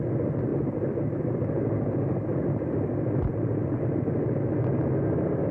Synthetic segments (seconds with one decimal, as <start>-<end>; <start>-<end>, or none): none